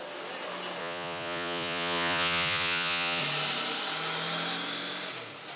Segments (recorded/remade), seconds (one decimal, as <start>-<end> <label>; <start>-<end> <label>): 0.0-0.8 recorded; 0.8-3.2 remade; 3.2-5.6 recorded